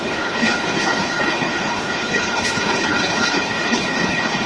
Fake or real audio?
fake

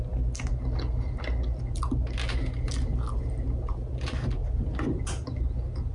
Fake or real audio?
real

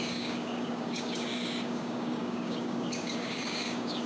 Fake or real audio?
fake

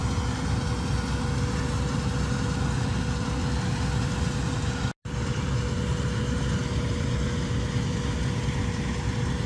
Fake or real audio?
real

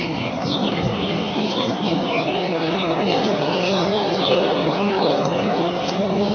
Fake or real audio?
fake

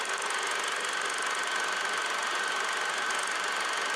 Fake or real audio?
real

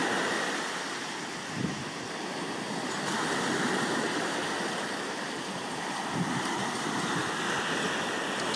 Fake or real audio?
real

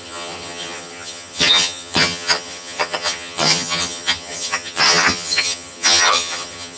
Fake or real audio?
fake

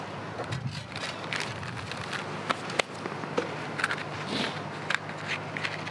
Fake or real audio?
real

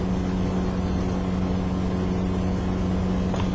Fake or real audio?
real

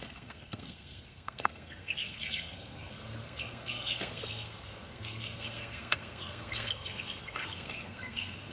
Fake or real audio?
fake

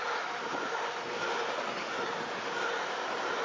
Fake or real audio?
real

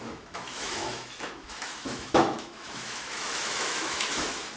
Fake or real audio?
fake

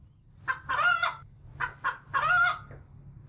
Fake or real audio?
real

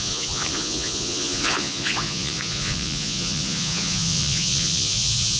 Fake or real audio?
fake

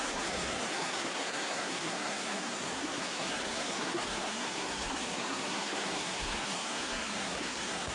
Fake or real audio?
fake